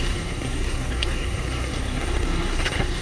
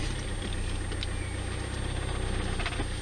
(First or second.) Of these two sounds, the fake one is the first